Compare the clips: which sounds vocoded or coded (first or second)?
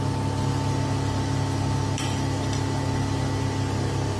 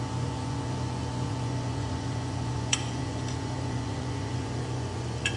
second